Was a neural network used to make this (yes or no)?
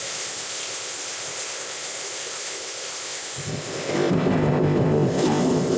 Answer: yes